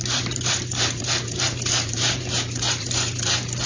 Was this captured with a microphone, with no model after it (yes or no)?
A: no